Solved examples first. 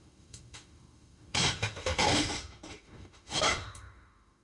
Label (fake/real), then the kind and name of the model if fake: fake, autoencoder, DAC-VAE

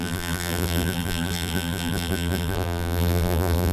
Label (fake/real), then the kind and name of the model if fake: fake, vocoder, BigVGAN v2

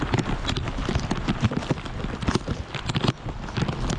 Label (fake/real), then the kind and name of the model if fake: real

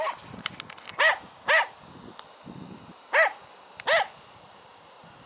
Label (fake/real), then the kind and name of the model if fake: real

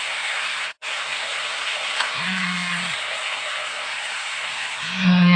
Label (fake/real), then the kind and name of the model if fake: fake, codec, SNAC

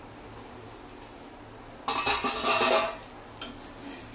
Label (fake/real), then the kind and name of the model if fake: real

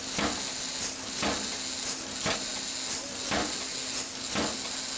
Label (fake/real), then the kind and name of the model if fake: real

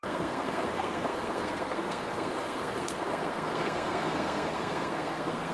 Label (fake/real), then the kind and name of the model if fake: fake, codec, SNAC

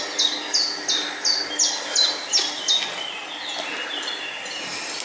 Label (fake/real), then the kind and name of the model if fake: real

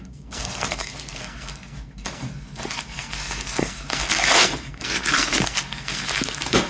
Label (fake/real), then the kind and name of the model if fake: fake, codec, SNAC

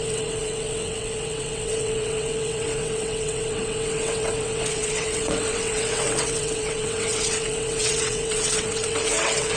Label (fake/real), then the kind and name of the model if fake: fake, vocoder, WaveNeXt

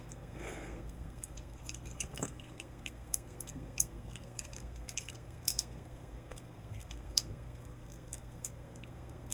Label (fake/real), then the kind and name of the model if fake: fake, codec, SNAC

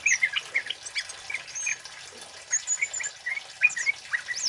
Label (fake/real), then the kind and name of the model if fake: real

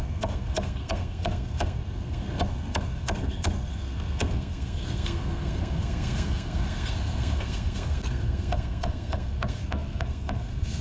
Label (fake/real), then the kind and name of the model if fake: fake, codec, SNAC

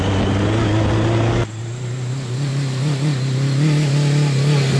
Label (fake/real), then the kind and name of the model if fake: real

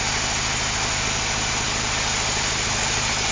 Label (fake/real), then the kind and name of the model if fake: real